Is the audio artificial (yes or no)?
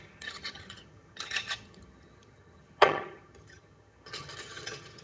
yes